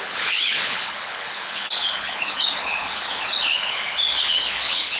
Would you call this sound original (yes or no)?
no